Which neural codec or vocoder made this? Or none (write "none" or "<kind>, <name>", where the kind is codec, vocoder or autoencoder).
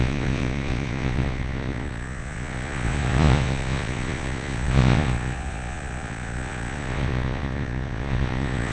vocoder, Vocos